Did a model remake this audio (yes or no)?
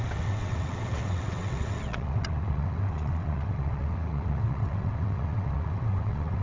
yes